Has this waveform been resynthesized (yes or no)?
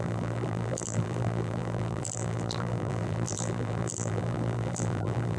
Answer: yes